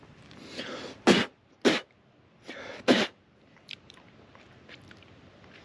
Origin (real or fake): real